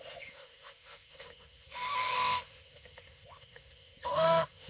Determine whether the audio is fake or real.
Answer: fake